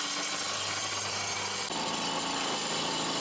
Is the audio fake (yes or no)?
no